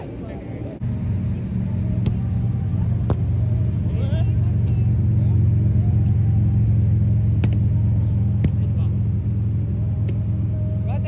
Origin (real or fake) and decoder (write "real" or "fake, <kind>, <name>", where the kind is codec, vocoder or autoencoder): real